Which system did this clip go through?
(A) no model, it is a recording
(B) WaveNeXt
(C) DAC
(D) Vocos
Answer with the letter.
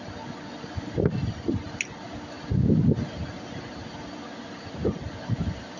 A